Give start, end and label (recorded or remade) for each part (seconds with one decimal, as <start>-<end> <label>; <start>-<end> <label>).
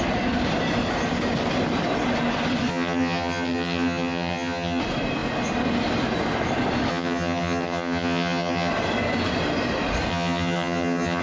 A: 0.0-2.7 recorded; 2.7-4.8 remade; 4.8-6.9 recorded; 6.9-8.7 remade; 8.7-10.1 recorded; 10.1-11.2 remade